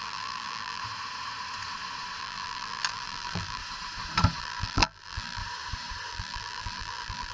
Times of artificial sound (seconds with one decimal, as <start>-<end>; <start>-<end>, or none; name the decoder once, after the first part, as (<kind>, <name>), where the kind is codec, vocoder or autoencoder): 0.0-0.8 (vocoder, BigVGAN v2); 2.2-3.6; 4.4-5.4; 6.1-7.3